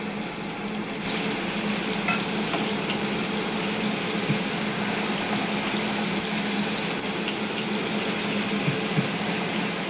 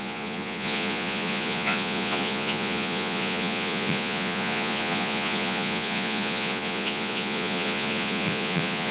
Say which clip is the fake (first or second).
second